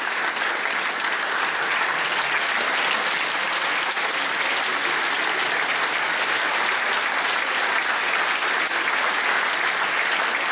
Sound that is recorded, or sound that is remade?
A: recorded